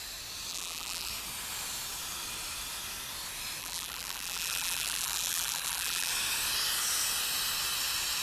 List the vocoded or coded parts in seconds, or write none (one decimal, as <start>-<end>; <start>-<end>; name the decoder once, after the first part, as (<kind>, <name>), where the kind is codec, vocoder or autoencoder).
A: 0.5-1.1 (vocoder, BigVGAN v2); 3.6-6.1

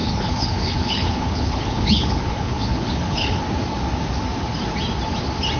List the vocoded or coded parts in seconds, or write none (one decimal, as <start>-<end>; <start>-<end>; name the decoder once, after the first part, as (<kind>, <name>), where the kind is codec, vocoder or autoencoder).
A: 0.0-3.4 (codec, HILCodec)

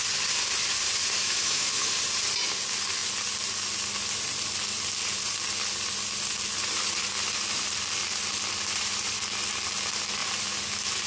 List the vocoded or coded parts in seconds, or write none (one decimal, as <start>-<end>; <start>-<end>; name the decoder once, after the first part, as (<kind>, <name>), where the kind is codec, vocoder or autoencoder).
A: 1.2-1.9 (autoencoder, DAC-VAE)

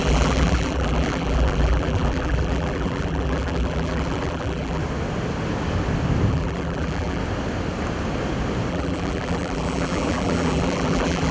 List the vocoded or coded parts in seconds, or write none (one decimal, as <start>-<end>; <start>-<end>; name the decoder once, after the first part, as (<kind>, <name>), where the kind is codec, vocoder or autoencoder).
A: 0.0-4.8 (vocoder, BigVGAN v2); 6.3-7.2; 8.7-11.3

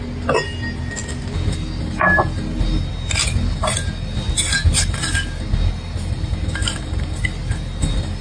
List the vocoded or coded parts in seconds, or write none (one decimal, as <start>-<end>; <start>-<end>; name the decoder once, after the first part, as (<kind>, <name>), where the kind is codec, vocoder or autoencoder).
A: none

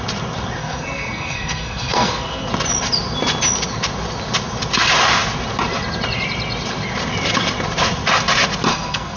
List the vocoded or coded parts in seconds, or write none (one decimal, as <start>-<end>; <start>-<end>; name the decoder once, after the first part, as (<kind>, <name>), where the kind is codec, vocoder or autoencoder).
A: 0.6-2.5 (codec, SNAC); 8.7-9.2

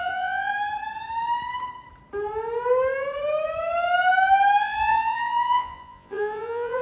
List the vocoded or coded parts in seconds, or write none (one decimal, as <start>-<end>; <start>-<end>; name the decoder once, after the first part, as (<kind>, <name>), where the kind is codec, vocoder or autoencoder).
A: 0.0-0.5 (vocoder, Vocos); 4.6-6.8

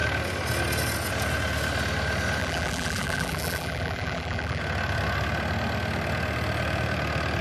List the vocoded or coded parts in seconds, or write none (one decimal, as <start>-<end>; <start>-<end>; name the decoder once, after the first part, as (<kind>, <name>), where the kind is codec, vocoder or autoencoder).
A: 2.4-4.6 (vocoder, BigVGAN v2)